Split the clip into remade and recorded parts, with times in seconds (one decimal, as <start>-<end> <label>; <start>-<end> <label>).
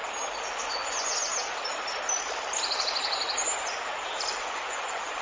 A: 0.0-0.6 recorded; 0.6-1.3 remade; 1.3-4.4 recorded; 4.4-5.2 remade